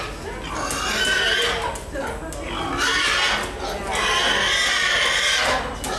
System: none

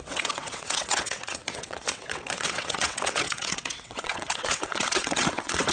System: vocoder, WaveNeXt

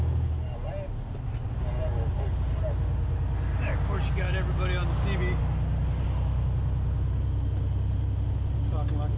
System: none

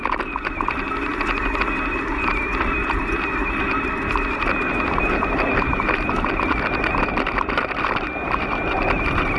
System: vocoder, BigVGAN v2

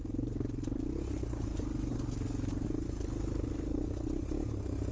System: none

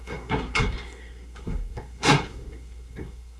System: codec, SNAC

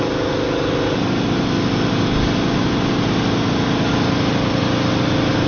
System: none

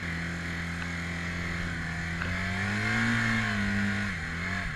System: none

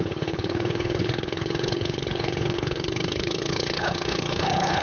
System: codec, HILCodec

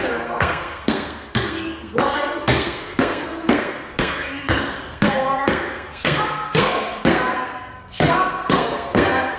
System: codec, SNAC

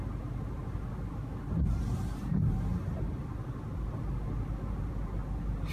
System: none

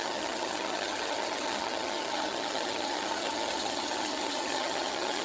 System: vocoder, HiFi-GAN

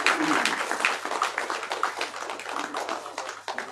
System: none